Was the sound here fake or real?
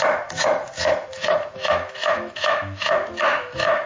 fake